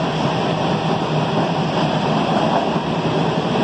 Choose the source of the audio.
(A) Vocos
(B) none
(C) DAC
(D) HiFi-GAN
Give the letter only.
B